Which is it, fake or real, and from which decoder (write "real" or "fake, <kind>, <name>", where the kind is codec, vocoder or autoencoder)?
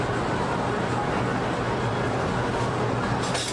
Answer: real